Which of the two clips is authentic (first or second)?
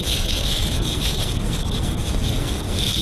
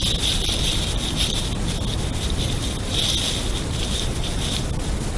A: second